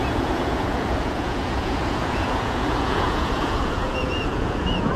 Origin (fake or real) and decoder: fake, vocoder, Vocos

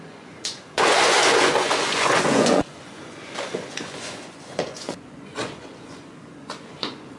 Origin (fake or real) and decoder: fake, vocoder, Vocos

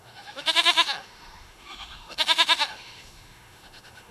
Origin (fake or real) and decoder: fake, autoencoder, DAC-VAE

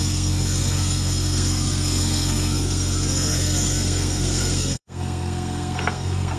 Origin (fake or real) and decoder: fake, codec, SNAC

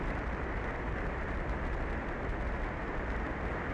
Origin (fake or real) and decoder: real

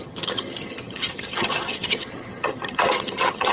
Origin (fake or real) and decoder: fake, vocoder, HiFi-GAN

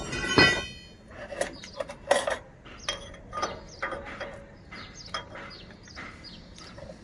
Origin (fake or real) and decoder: real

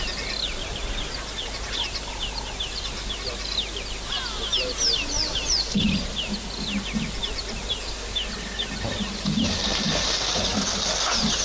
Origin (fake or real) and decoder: real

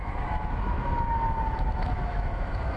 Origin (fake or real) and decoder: fake, autoencoder, DAC-VAE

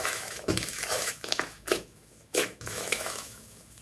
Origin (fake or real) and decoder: fake, autoencoder, DAC-VAE